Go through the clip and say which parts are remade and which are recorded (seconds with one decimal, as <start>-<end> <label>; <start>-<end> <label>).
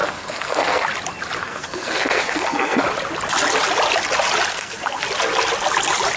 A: 0.0-0.8 remade; 0.8-1.4 recorded; 1.4-2.8 remade; 2.8-4.5 recorded; 4.5-5.0 remade; 5.0-6.2 recorded